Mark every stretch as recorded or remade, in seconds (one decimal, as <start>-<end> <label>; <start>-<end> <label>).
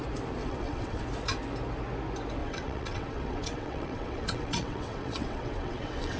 0.0-0.4 recorded; 0.4-1.0 remade; 1.0-2.4 recorded; 2.4-6.2 remade